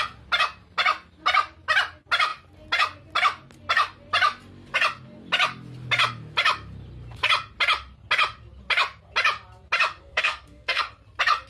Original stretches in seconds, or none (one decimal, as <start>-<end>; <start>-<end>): 0.0-10.0; 10.8-11.5